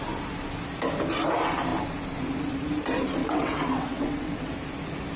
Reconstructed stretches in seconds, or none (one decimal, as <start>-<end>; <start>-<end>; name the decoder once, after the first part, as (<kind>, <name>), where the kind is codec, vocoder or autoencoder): 3.2-4.5 (vocoder, WaveNeXt)